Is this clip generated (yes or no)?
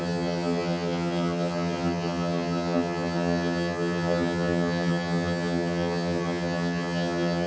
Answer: yes